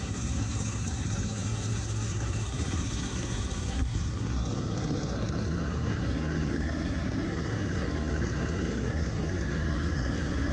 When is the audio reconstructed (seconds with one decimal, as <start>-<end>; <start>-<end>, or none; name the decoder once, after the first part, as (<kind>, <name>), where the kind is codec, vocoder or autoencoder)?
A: 0.0-10.5 (codec, SNAC)